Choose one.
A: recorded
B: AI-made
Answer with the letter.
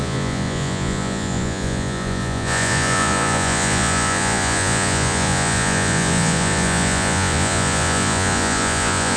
B